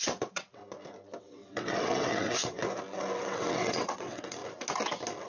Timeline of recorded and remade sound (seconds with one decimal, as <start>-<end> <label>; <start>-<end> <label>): 0.0-0.6 remade; 0.6-1.2 recorded; 1.2-2.6 remade; 2.6-3.2 recorded; 3.2-4.4 remade; 4.4-5.3 recorded